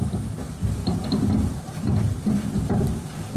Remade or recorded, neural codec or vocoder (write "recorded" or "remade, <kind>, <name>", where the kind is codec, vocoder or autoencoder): remade, vocoder, BigVGAN v2